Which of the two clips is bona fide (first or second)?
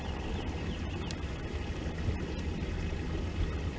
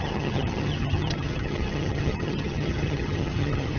first